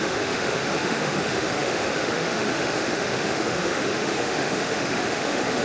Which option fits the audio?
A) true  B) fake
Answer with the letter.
B